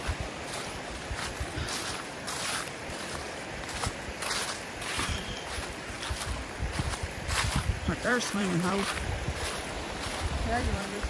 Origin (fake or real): fake